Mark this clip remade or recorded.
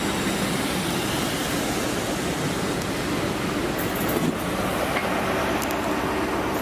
recorded